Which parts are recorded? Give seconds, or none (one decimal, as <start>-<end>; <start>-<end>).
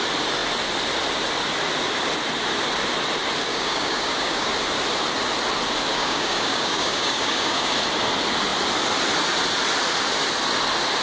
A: 0.0-3.5; 4.5-5.9; 7.7-11.0